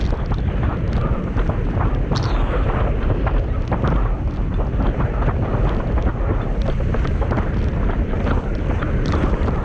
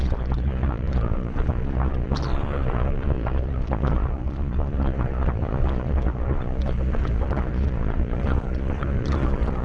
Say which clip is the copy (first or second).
second